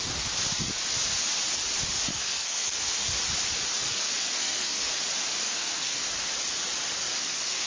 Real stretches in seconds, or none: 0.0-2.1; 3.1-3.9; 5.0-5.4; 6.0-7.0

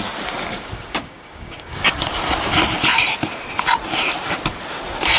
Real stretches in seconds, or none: 0.0-0.5; 2.0-5.2

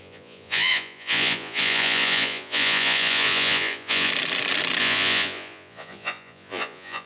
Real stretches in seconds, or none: 4.1-4.8